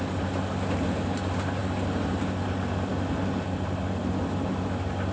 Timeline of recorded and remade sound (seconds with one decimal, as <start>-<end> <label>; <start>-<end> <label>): 0.0-5.1 recorded